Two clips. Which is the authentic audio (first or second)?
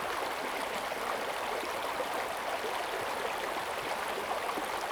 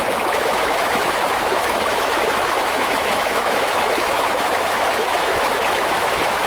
first